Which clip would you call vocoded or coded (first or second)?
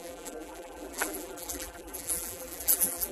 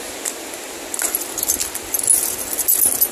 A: first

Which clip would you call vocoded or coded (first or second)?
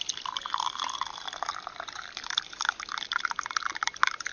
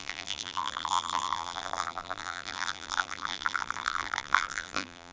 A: second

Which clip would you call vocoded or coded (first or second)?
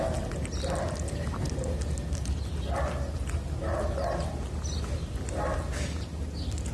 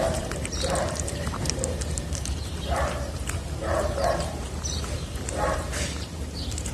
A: second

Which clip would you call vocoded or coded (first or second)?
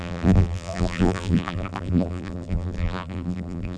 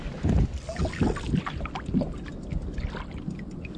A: first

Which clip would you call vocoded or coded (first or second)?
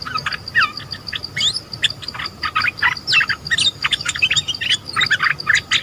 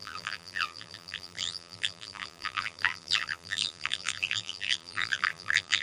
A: second